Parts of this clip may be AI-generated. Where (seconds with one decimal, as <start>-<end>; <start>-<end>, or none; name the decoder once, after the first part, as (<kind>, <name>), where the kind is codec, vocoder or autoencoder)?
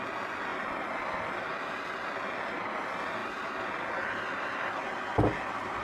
3.2-4.5 (vocoder, BigVGAN v2)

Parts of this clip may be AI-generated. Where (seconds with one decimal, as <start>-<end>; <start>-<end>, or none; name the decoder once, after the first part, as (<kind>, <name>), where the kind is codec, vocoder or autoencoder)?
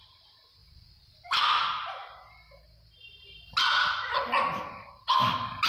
0.6-1.4 (vocoder, BigVGAN v2)